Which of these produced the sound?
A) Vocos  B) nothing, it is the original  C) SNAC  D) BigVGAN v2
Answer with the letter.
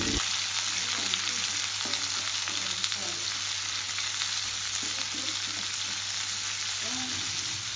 B